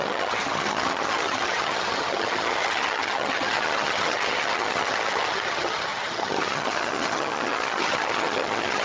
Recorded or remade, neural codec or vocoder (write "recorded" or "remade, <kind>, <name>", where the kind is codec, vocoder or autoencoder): remade, vocoder, HiFi-GAN